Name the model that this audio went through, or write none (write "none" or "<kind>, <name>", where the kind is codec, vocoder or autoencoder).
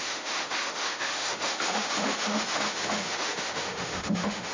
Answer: autoencoder, DAC-VAE